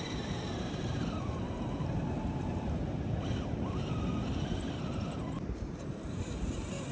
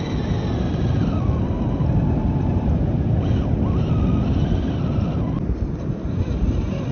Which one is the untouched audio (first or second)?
second